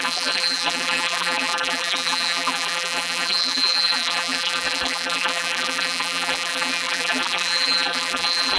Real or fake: fake